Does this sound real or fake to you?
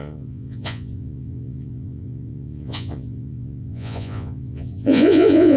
fake